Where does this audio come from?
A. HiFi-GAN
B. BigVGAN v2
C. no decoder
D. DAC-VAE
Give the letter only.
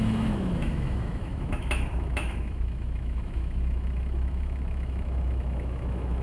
D